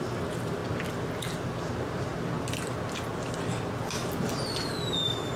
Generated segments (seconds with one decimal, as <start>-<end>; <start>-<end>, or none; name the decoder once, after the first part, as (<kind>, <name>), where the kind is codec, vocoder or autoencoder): none